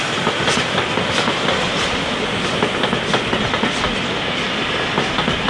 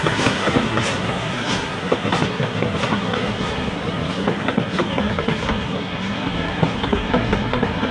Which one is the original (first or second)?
first